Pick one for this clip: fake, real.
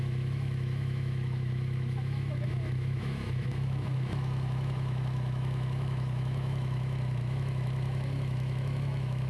fake